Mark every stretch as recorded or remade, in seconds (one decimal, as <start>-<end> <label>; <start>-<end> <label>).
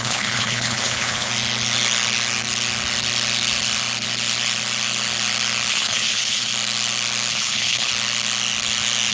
0.0-1.3 remade; 1.3-5.7 recorded; 5.7-6.5 remade; 6.5-7.3 recorded; 7.3-7.9 remade; 7.9-9.1 recorded